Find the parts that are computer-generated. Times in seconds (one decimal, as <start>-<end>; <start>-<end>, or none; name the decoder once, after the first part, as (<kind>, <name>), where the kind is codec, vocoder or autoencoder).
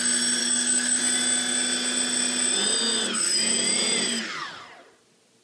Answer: 0.4-1.0 (codec, DAC)